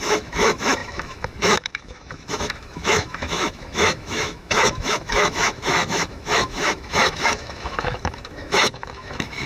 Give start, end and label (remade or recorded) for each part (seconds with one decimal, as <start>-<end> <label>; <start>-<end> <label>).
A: 0.0-9.5 remade